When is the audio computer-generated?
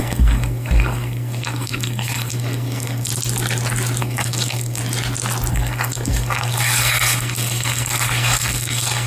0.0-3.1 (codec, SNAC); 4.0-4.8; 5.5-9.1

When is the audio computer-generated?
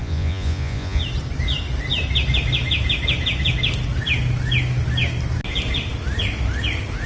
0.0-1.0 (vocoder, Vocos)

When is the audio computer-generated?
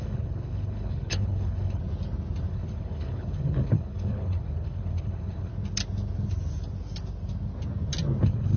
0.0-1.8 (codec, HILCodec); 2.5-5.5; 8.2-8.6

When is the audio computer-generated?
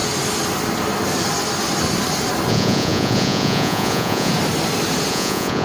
2.5-4.3 (vocoder, Vocos); 5.1-5.6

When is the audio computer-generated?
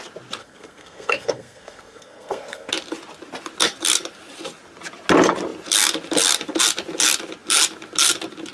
0.4-2.7 (codec, SNAC)